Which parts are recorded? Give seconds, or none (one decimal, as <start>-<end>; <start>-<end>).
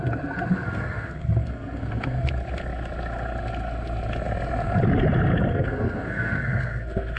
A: 0.0-0.5; 2.3-5.5